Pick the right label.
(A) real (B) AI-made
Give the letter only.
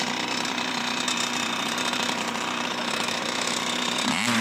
B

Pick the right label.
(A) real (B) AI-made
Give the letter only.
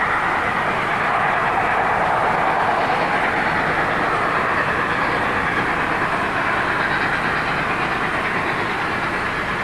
A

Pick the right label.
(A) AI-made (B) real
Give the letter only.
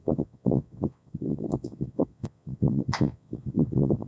A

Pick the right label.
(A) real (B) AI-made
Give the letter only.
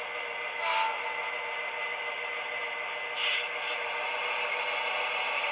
A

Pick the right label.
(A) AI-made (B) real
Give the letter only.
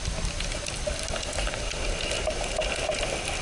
B